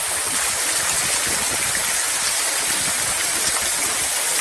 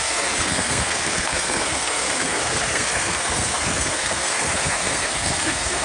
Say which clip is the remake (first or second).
second